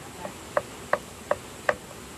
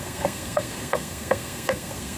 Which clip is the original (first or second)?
first